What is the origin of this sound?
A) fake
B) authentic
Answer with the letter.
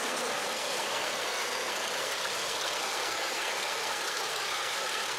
A